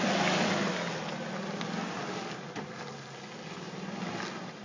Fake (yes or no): no